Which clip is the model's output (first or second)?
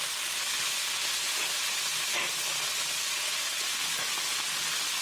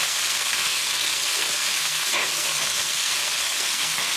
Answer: second